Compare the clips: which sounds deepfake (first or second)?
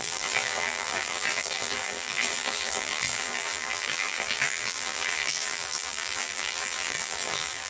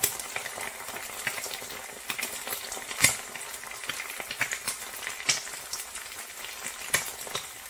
first